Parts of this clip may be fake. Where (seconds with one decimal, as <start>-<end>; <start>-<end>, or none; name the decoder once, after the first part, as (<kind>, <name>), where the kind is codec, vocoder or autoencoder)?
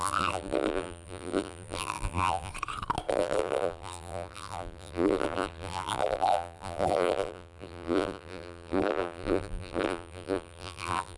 0.0-2.5 (vocoder, BigVGAN v2); 3.1-11.2